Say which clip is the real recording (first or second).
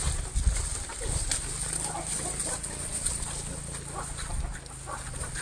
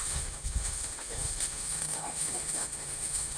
first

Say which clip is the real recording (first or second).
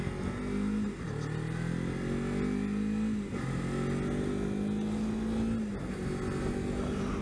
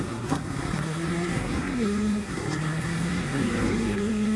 first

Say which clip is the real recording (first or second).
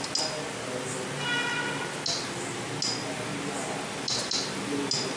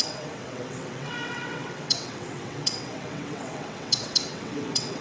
first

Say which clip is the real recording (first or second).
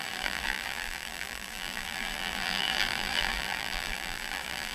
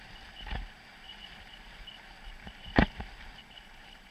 second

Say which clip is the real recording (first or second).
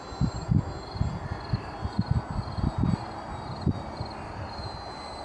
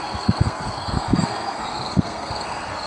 first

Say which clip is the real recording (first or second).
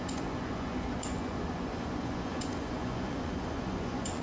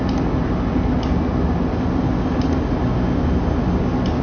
second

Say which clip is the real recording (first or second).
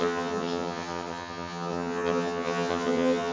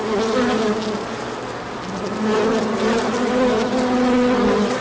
second